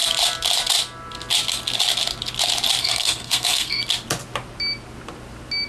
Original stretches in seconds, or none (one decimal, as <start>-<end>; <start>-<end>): 0.0-2.8; 3.8-5.7